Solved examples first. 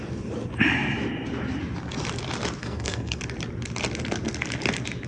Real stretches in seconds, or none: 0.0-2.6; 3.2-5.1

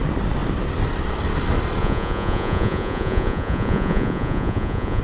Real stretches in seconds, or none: 0.0-1.8

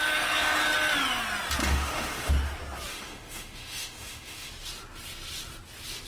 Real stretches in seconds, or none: 0.0-1.6; 2.3-2.9; 4.5-6.1

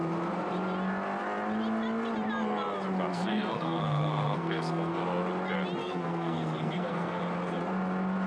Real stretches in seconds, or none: 0.0-3.1; 5.0-5.8; 7.2-8.3

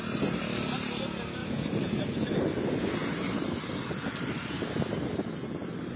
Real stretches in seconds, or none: 0.0-1.4; 2.3-3.0; 3.7-6.0

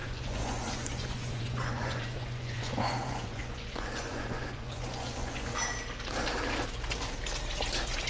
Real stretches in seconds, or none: 5.5-8.1

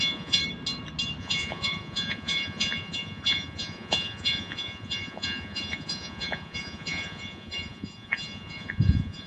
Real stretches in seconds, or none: 0.4-1.2